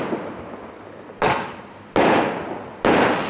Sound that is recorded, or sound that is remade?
recorded